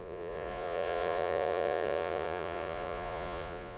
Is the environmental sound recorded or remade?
remade